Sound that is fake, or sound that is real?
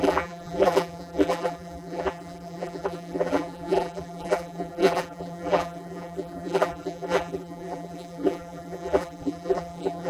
fake